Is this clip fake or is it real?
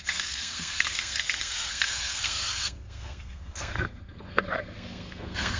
fake